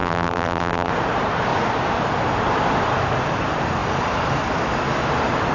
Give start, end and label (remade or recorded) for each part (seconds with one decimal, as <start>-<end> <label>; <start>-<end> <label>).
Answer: 0.0-0.9 remade; 0.9-5.5 recorded